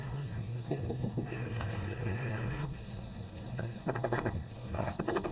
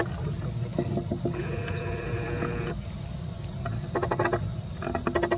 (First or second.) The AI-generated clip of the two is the first